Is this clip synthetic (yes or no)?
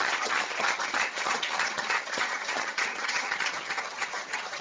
yes